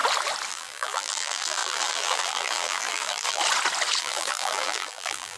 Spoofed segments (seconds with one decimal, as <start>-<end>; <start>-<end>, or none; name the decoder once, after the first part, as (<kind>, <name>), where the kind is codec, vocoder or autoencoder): 0.5-3.4 (vocoder, BigVGAN v2); 4.0-5.4